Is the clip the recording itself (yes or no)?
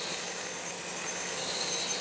yes